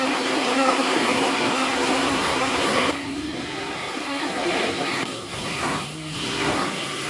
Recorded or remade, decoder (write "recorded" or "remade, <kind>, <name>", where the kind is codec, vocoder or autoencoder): remade, codec, SNAC